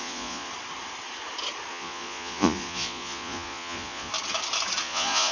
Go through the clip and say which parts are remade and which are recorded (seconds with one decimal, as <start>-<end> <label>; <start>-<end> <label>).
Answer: 0.0-0.5 remade; 0.5-1.7 recorded; 1.7-4.1 remade; 4.1-4.8 recorded; 4.8-5.3 remade